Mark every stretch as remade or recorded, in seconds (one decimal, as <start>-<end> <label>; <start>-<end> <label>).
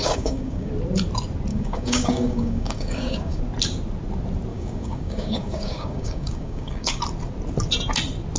0.0-0.7 remade; 0.7-1.5 recorded; 1.5-3.4 remade; 3.4-4.5 recorded; 4.5-7.0 remade; 7.0-8.4 recorded